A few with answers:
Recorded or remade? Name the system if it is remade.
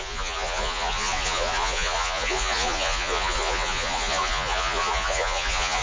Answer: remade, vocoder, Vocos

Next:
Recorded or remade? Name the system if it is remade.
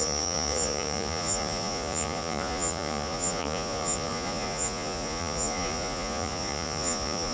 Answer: remade, vocoder, Vocos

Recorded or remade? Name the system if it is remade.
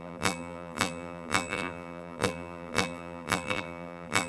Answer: remade, vocoder, BigVGAN v2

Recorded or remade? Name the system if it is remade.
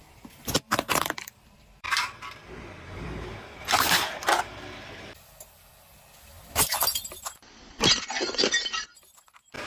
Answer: remade, vocoder, BigVGAN v2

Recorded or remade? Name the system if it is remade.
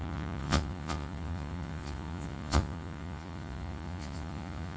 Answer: remade, vocoder, Vocos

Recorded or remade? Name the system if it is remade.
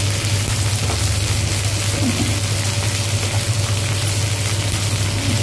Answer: recorded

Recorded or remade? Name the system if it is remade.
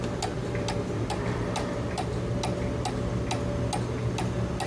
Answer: recorded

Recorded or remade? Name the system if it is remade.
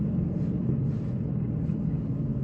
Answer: recorded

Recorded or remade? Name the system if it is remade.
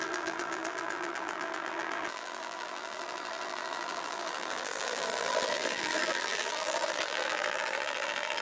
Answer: remade, vocoder, BigVGAN v2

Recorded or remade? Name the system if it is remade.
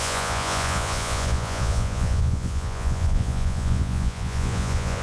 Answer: remade, vocoder, Vocos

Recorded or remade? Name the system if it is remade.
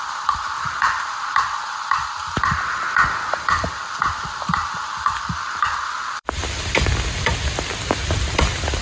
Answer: remade, vocoder, BigVGAN v2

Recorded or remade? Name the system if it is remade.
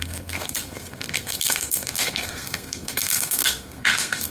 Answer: remade, codec, SNAC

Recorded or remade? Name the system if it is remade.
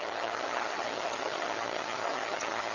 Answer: remade, vocoder, HiFi-GAN